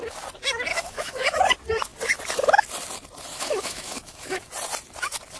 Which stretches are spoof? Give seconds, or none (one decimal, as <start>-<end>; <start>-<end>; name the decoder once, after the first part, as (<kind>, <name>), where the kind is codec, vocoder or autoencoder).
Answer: 0.7-1.4 (autoencoder, DAC-VAE); 3.3-4.5